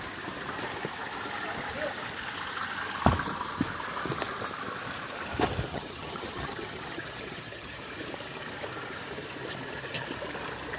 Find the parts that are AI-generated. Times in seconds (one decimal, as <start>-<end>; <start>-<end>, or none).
5.7-7.8